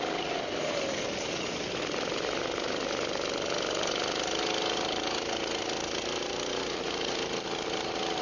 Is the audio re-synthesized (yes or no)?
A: no